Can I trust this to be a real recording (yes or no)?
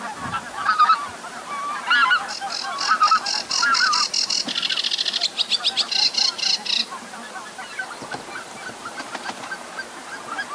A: yes